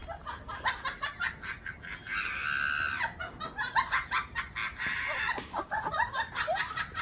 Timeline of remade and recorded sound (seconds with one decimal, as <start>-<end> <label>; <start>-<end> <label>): 0.0-1.1 remade; 1.1-4.6 recorded; 4.6-7.0 remade